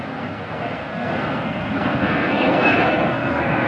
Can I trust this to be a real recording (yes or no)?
no